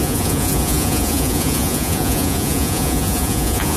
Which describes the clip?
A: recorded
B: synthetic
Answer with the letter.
B